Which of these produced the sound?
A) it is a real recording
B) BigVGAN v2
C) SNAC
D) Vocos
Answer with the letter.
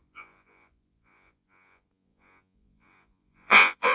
D